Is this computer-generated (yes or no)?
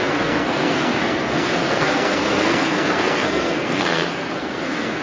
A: yes